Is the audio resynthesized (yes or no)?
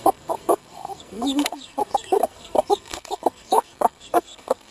yes